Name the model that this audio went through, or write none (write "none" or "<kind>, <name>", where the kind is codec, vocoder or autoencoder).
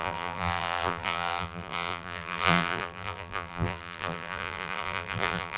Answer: vocoder, BigVGAN v2